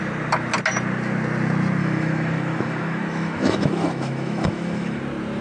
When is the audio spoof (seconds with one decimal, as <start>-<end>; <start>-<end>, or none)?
1.8-5.0